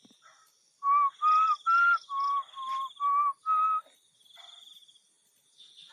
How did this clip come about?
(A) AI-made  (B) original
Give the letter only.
B